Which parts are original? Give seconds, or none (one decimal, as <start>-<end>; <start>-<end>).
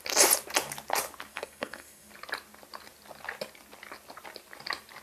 0.0-1.3; 2.1-5.0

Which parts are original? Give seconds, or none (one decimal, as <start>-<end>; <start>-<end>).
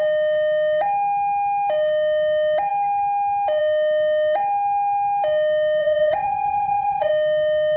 0.0-5.8; 7.1-7.8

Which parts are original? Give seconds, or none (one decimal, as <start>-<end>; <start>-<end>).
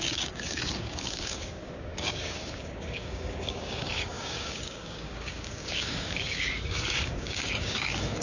none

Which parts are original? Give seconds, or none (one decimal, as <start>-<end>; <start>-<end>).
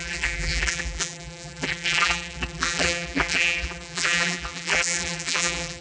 none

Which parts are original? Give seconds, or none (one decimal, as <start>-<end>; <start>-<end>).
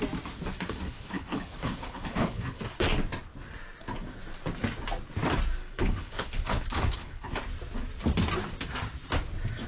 0.0-0.5; 2.6-5.6; 7.4-9.7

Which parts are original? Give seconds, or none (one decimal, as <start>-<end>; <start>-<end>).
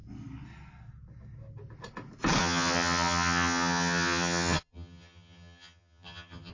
0.0-2.4